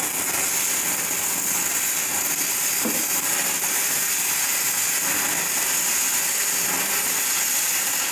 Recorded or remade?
recorded